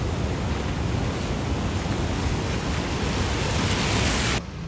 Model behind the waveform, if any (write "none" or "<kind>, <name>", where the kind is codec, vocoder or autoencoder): none